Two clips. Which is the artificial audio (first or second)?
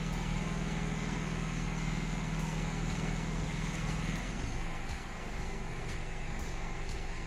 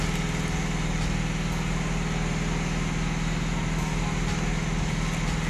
first